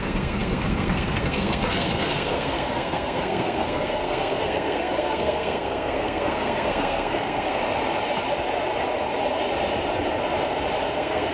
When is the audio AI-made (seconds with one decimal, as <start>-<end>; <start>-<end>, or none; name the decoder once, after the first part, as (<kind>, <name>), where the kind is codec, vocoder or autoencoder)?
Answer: 0.0-7.6 (codec, SNAC); 10.9-11.3

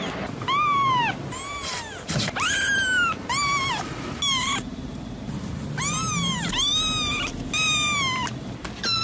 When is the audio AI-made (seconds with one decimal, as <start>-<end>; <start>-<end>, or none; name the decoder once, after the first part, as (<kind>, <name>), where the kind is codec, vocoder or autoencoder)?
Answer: none

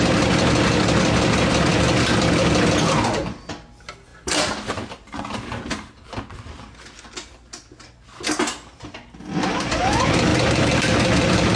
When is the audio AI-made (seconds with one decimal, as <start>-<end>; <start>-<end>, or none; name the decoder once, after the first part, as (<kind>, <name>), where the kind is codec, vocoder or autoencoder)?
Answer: 10.3-11.6 (vocoder, BigVGAN v2)

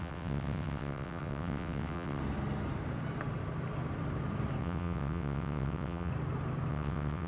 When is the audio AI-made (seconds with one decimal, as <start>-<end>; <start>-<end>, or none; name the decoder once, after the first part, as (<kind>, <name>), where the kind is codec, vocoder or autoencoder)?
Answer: 0.0-2.2 (vocoder, WaveNeXt); 4.6-6.1; 6.7-7.3

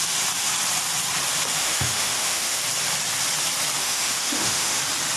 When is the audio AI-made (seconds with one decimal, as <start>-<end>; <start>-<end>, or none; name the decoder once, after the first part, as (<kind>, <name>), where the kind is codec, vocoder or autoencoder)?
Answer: 1.6-2.6 (autoencoder, DAC-VAE); 3.8-4.8

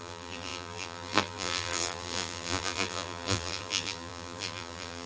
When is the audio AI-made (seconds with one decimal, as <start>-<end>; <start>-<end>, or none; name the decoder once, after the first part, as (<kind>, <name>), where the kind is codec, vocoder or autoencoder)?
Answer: 0.0-5.1 (vocoder, BigVGAN v2)

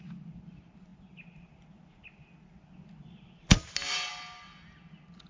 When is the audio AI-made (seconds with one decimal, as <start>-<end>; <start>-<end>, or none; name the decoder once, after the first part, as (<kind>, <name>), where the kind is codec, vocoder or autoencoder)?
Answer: none

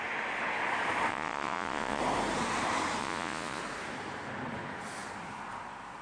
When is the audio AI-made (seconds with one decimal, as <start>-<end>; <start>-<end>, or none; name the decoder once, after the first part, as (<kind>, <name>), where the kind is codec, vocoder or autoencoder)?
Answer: 1.1-2.0 (vocoder, Vocos); 3.0-3.6